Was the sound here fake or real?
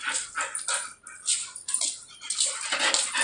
real